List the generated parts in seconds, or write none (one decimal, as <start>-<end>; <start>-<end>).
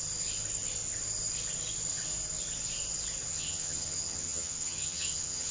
3.3-5.5